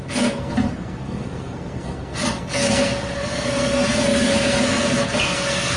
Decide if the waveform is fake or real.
fake